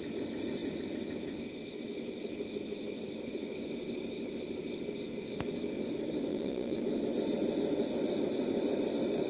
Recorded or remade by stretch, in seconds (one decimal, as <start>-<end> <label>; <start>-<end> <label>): 0.0-6.3 recorded; 6.3-6.8 remade; 6.8-9.3 recorded